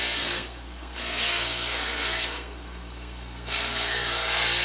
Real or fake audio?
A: fake